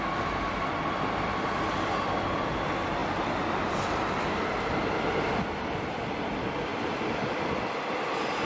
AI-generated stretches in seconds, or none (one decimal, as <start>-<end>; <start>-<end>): none